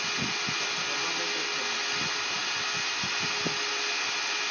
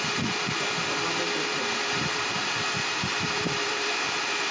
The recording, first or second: first